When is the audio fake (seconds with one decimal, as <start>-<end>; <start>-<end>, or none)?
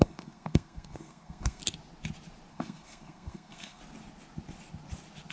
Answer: 0.0-1.6; 2.5-3.8